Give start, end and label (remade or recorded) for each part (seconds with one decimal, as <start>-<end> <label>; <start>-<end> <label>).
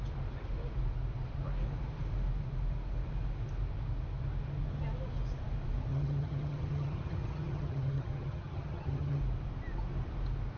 0.0-5.9 recorded; 5.9-9.2 remade; 9.2-10.6 recorded